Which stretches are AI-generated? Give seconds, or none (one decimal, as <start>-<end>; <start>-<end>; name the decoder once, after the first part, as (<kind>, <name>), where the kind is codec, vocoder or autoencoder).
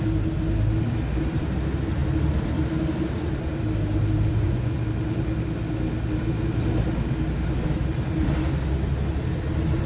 4.3-4.8 (vocoder, Vocos)